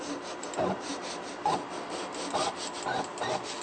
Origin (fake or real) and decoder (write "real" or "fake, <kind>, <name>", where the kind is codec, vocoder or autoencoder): real